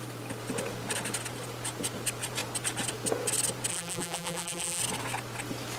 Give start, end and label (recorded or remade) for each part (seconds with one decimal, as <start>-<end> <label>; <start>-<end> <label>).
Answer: 0.0-3.7 recorded; 3.7-4.8 remade; 4.8-5.8 recorded